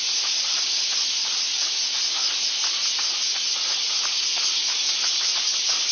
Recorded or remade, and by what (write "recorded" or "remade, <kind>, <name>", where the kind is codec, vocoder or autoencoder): recorded